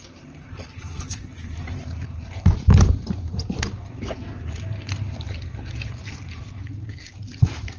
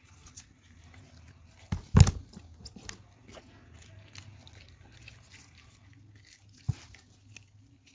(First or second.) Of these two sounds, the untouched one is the second